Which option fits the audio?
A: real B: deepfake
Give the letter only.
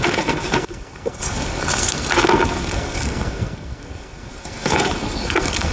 B